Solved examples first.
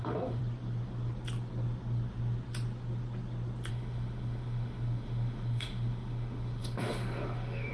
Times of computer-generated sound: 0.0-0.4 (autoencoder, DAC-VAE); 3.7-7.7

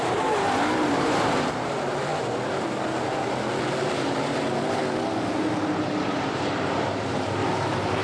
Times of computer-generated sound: 0.0-2.1 (vocoder, BigVGAN v2); 3.6-4.8; 5.5-8.0

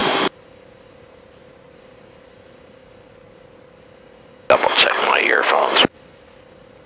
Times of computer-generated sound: 0.0-2.8 (vocoder, BigVGAN v2)

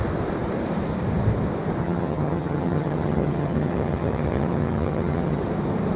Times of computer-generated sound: 1.8-5.4 (vocoder, HiFi-GAN)

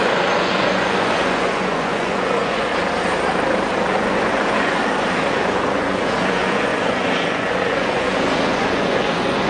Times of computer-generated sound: 0.0-2.7 (vocoder, Vocos); 3.9-4.8; 5.3-9.5

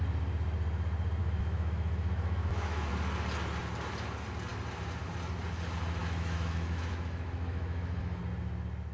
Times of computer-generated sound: 1.2-2.9 (autoencoder, DAC-VAE); 6.0-8.2